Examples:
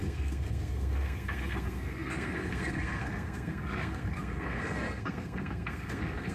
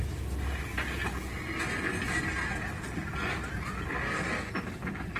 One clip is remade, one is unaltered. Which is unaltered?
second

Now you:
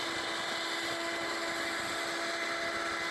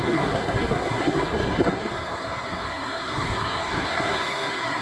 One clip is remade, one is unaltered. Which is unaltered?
first